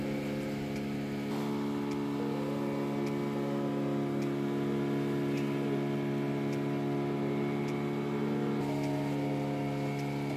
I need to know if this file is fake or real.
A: real